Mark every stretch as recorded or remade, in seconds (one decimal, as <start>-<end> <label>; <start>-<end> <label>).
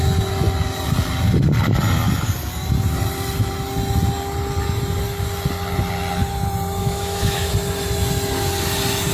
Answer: 0.0-6.8 recorded; 6.8-7.5 remade; 7.5-9.1 recorded